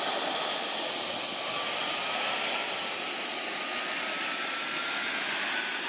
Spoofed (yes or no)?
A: no